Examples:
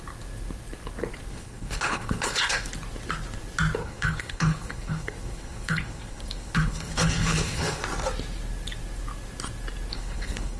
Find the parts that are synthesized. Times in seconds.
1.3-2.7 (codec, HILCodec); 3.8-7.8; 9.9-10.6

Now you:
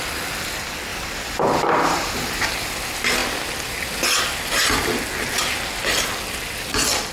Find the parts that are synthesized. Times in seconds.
0.9-2.4 (vocoder, BigVGAN v2)

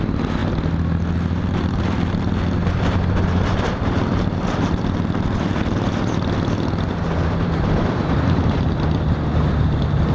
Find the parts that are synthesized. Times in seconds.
0.0-0.4 (vocoder, BigVGAN v2); 1.4-10.1

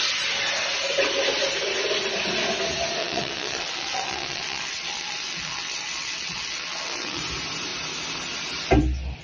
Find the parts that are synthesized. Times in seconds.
3.0-7.2 (vocoder, WaveNeXt)

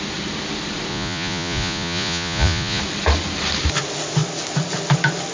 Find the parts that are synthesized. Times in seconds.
0.9-2.8 (vocoder, Vocos)

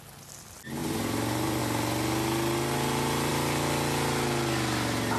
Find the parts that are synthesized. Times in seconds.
0.8-1.6 (vocoder, BigVGAN v2)

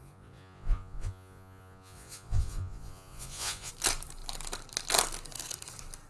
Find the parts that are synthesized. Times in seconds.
0.0-3.7 (vocoder, Vocos)